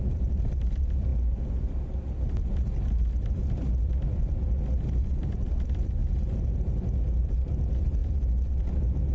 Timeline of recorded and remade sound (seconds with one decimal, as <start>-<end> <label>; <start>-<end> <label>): 0.0-1.1 remade; 1.1-2.9 recorded; 2.9-6.0 remade; 6.0-7.2 recorded; 7.2-9.1 remade